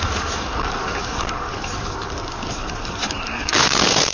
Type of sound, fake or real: fake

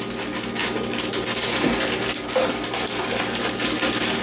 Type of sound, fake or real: real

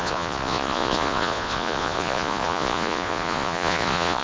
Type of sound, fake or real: fake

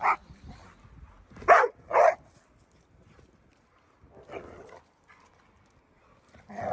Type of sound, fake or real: real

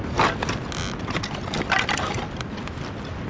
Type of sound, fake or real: real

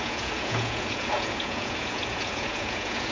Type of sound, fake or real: fake